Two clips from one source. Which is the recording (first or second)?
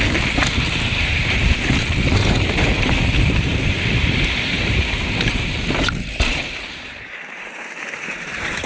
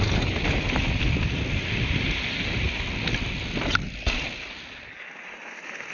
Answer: second